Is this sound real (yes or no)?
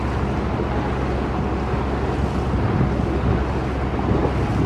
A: yes